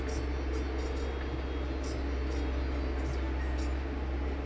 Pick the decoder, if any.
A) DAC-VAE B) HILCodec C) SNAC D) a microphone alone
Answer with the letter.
D